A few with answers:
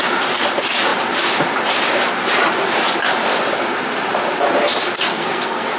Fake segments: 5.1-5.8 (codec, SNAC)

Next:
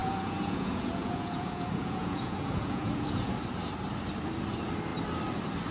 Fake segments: 0.0-3.3 (vocoder, Vocos)

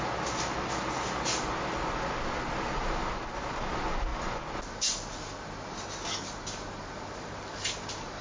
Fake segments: none